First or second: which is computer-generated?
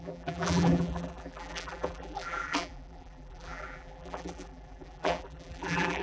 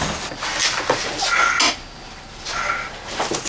first